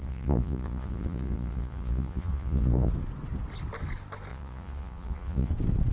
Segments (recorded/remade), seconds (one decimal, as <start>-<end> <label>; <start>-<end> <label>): 0.0-2.9 remade; 2.9-4.3 recorded; 4.3-5.5 remade; 5.5-5.9 recorded